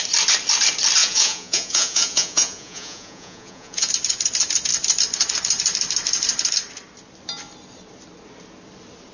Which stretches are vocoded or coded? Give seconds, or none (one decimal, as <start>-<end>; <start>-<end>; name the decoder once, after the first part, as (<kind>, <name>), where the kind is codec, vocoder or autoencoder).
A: 1.0-3.9 (vocoder, Vocos)